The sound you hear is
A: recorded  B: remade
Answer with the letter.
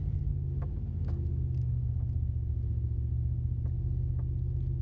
A